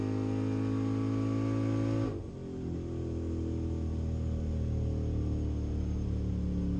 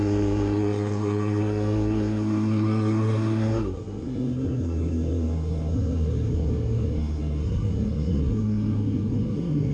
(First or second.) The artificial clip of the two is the second